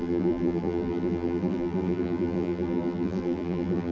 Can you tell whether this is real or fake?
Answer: fake